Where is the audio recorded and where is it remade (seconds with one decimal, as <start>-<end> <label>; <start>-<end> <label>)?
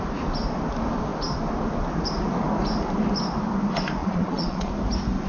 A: 0.0-4.0 recorded; 4.0-4.7 remade; 4.7-5.3 recorded